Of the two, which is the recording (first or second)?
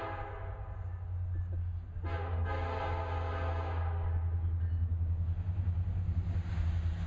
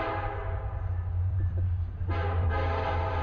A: first